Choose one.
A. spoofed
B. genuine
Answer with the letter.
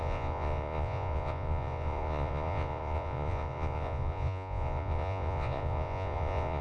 A